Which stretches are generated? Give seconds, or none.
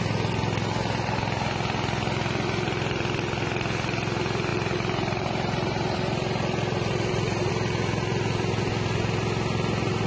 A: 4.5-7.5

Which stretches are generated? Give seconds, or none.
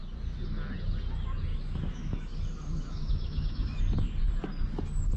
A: 1.5-3.8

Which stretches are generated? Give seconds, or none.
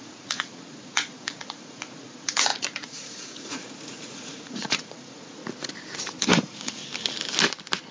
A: 0.0-5.4; 6.2-6.8